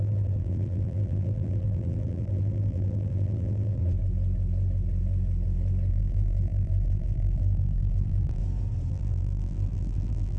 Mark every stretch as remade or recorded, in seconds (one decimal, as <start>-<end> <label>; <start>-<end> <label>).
0.0-3.8 remade; 3.8-5.9 recorded; 5.9-8.4 remade; 8.4-8.9 recorded; 8.9-10.4 remade